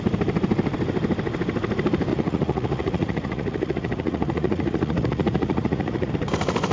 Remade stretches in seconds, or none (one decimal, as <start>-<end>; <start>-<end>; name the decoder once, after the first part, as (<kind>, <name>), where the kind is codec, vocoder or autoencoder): 2.1-6.1 (vocoder, Vocos)